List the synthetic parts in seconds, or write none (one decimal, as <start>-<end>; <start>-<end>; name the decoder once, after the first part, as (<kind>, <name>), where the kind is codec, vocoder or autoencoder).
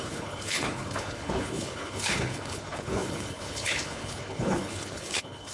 0.0-5.5 (codec, HILCodec)